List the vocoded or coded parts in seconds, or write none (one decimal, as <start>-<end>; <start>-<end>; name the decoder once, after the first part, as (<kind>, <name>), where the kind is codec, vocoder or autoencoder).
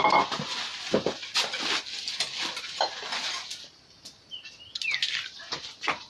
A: none